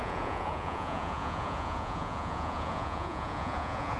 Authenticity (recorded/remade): remade